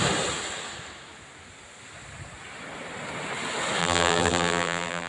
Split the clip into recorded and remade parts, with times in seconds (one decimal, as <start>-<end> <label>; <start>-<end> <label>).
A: 0.0-3.8 recorded; 3.8-5.1 remade